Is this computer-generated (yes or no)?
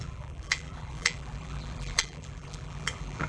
yes